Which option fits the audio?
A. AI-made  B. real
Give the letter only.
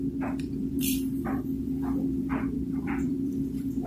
A